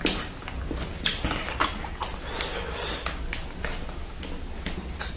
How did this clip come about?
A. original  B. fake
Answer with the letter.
A